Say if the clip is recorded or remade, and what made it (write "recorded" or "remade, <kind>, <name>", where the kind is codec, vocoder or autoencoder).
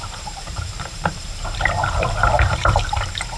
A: remade, vocoder, BigVGAN v2